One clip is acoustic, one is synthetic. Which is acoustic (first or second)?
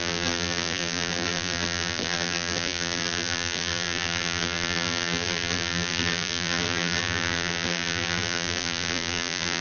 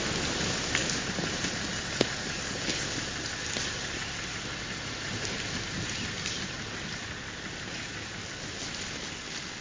second